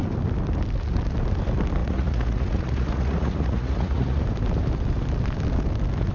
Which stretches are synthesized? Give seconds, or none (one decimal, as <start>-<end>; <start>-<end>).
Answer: 1.8-4.2

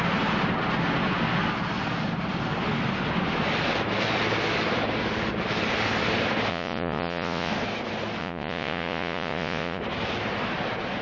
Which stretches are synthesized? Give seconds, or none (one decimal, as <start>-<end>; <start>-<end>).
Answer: 6.5-7.5; 8.2-9.8

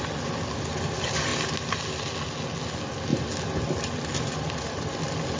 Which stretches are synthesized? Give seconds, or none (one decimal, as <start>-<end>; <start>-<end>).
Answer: none

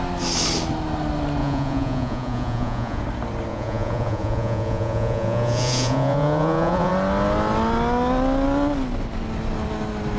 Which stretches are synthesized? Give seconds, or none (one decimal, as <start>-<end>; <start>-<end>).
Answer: 1.4-3.0; 3.5-6.9

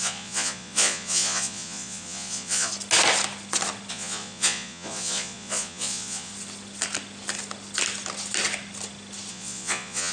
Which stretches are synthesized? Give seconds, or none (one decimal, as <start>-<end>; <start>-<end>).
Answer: 0.0-2.7; 3.9-6.3; 9.3-10.1

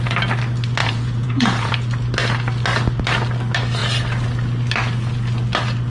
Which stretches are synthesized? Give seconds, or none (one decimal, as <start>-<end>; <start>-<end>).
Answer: 0.8-1.7

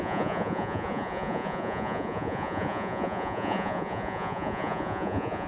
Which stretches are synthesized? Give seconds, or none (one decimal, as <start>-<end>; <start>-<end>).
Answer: 0.0-5.5

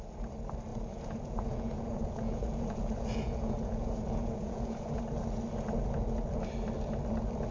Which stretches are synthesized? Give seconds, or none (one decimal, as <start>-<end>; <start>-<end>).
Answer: 0.7-5.0